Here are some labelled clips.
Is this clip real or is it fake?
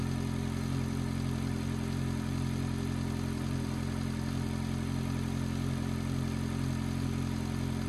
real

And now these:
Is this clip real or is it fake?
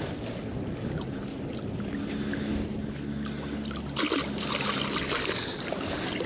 real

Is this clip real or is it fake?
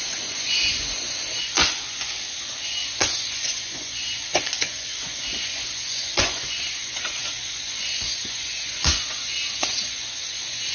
fake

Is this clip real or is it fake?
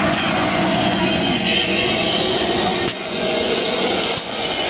fake